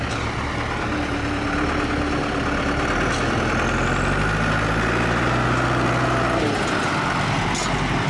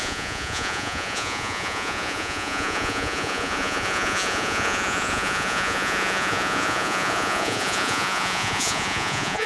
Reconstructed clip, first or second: second